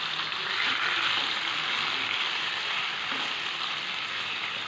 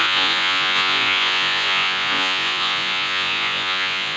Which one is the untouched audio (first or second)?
first